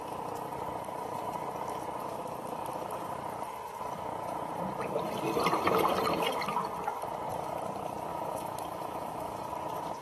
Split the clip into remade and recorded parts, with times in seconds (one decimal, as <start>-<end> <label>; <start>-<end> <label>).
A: 0.0-8.1 recorded; 8.1-9.5 remade; 9.5-10.0 recorded